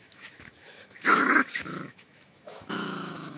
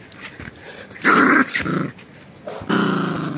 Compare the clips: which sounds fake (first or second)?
first